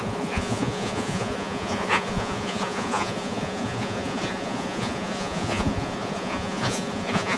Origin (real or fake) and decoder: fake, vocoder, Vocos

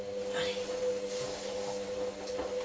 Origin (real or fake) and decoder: real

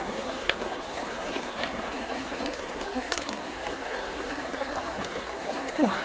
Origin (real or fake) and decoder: fake, codec, SNAC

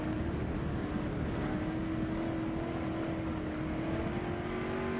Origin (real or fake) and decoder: real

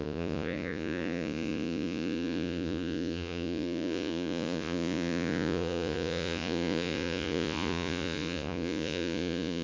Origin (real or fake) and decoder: fake, vocoder, Vocos